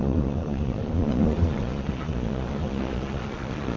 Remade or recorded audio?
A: remade